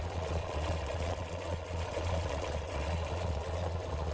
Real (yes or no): no